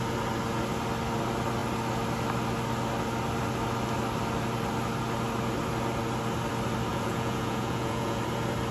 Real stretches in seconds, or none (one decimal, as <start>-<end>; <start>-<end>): 0.0-6.9; 8.2-8.7